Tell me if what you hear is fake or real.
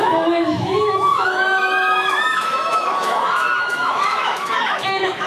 fake